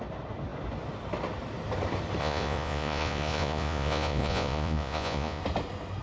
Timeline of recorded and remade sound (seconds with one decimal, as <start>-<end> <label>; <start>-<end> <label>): 0.0-2.2 recorded; 2.2-5.4 remade; 5.4-6.0 recorded